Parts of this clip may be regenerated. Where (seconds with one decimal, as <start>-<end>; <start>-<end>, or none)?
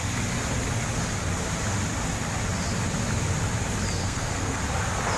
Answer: 4.0-4.6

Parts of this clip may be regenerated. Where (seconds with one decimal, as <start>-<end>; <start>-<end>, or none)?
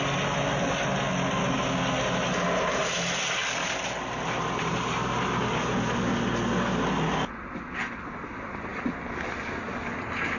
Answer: none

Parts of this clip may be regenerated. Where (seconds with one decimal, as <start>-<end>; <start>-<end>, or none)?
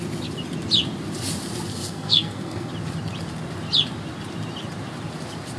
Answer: 1.7-2.7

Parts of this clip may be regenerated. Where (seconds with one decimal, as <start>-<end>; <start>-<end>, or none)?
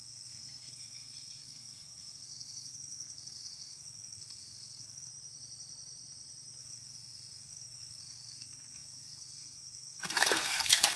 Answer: 0.0-5.1; 6.6-11.0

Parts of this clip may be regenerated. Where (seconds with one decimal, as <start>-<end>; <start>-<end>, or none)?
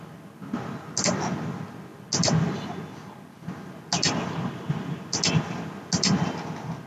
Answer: none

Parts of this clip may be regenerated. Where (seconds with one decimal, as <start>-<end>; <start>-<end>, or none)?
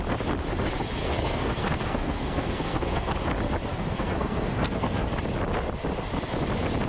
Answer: 1.0-3.1; 3.7-5.1